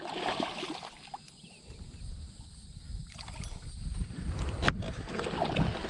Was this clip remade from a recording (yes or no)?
no